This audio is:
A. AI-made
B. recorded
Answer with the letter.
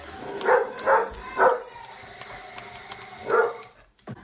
B